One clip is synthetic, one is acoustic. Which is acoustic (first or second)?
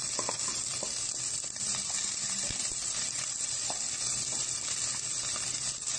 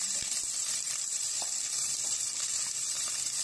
first